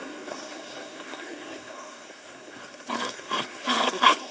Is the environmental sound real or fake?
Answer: fake